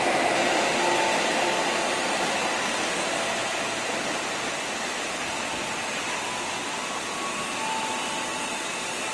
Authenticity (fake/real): real